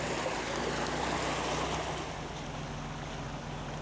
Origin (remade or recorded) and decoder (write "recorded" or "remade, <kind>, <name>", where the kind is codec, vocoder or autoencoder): recorded